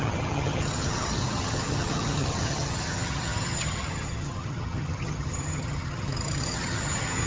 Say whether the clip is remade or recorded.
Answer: remade